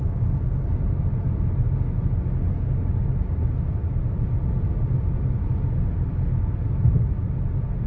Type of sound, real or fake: real